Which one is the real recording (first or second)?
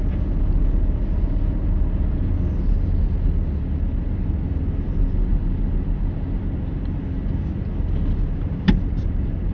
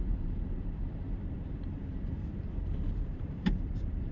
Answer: first